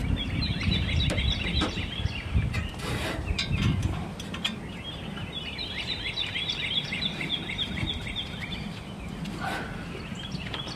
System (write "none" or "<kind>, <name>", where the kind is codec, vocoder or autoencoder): vocoder, BigVGAN v2